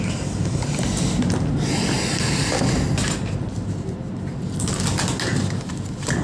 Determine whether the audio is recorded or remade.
recorded